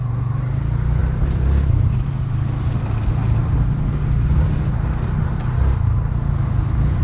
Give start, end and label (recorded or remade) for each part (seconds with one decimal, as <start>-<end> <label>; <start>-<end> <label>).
0.0-7.0 recorded